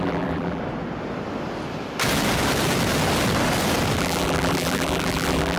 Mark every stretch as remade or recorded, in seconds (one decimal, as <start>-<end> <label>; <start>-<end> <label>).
0.0-0.6 remade; 0.6-4.0 recorded; 4.0-5.6 remade